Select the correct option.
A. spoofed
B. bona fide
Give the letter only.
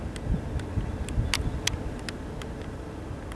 B